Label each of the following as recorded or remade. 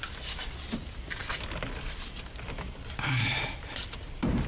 recorded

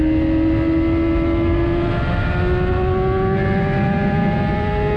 recorded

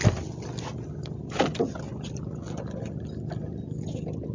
recorded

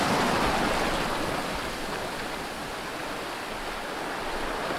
recorded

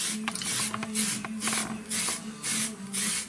recorded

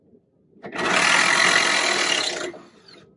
recorded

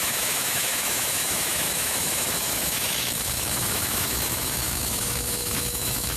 remade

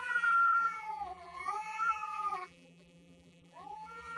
remade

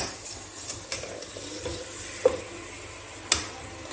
recorded